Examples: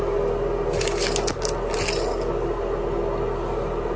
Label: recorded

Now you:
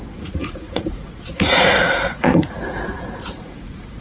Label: remade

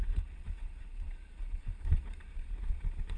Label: remade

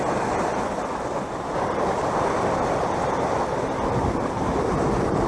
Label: recorded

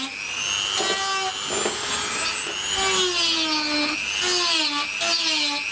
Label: recorded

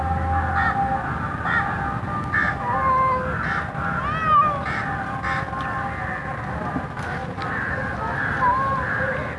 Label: recorded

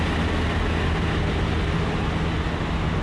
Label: recorded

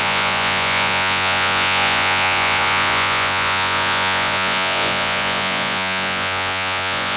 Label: remade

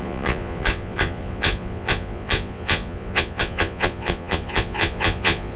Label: remade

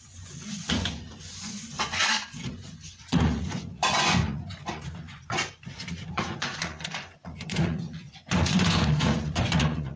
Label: remade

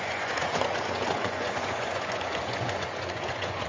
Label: remade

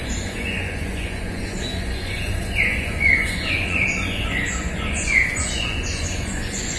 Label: remade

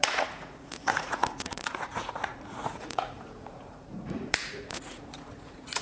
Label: remade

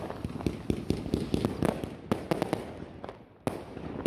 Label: recorded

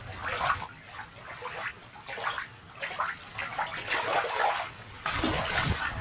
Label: recorded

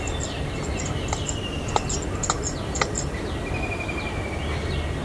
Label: recorded